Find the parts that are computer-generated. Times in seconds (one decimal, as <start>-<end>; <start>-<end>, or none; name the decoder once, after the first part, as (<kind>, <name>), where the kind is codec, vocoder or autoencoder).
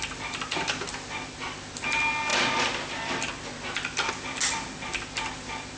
none